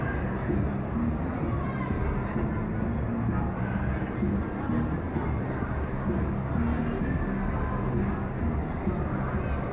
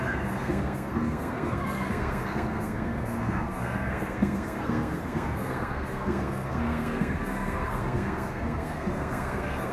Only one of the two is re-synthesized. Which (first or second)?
second